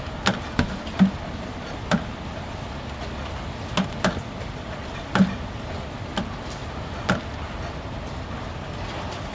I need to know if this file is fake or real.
real